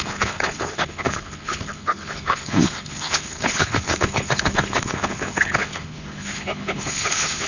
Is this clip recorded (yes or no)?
no